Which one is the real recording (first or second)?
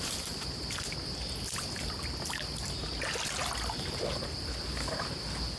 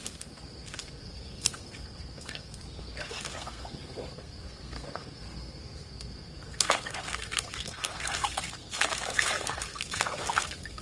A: first